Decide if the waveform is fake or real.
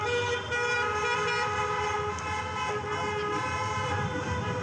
real